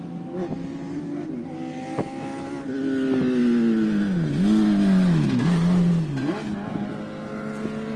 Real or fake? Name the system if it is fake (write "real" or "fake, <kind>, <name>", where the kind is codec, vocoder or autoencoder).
real